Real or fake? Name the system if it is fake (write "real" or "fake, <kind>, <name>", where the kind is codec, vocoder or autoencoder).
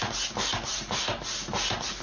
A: real